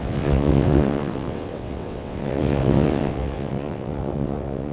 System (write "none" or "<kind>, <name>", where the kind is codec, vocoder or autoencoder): vocoder, WaveNeXt